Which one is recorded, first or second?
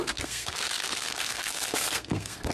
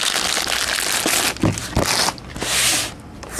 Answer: second